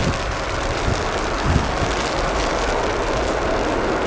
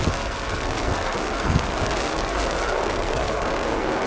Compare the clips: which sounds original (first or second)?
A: first